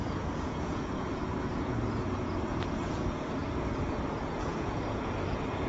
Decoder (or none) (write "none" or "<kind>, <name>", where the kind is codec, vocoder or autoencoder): vocoder, Vocos